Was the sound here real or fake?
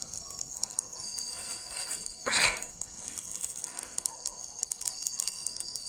fake